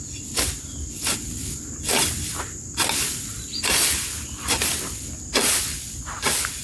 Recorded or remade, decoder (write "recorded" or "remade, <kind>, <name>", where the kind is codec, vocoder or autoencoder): recorded